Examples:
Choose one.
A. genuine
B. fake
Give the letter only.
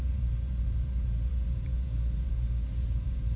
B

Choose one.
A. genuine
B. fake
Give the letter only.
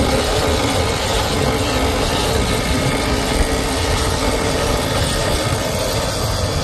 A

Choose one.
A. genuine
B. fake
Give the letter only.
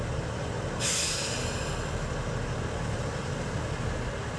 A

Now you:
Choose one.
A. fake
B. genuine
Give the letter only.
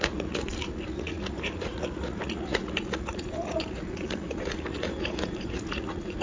A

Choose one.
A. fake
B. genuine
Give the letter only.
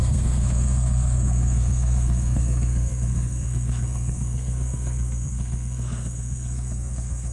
A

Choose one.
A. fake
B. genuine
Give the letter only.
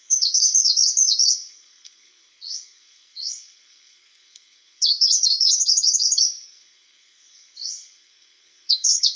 A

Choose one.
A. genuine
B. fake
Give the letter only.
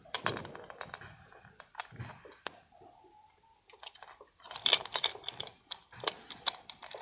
A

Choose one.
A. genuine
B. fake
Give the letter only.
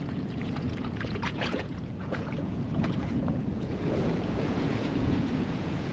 B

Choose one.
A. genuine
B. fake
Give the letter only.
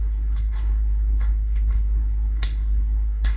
B